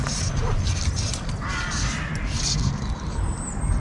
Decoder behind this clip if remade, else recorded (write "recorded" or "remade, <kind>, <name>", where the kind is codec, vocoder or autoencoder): recorded